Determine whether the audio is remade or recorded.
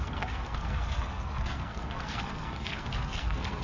remade